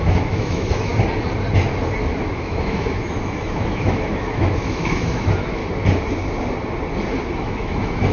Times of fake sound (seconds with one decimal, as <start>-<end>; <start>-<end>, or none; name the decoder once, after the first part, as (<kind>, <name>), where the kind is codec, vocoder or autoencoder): 0.0-0.9 (autoencoder, DAC-VAE); 2.0-5.6; 7.4-8.1